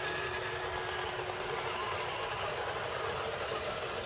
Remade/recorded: recorded